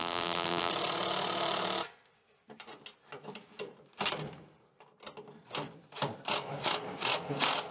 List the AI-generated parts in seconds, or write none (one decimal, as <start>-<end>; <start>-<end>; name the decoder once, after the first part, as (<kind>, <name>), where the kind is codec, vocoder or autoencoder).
0.0-0.7 (vocoder, BigVGAN v2)

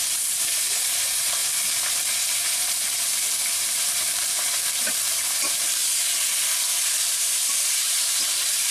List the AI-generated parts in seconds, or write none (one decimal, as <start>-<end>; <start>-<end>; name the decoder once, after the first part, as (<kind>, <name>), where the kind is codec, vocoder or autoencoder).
0.0-1.4 (vocoder, BigVGAN v2); 3.9-5.8; 7.0-8.7

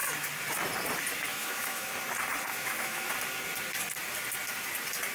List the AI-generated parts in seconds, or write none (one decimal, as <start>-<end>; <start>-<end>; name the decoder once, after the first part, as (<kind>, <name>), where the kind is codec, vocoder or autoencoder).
1.3-1.9 (autoencoder, DAC-VAE); 2.5-3.1